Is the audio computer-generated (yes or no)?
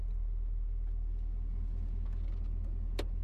no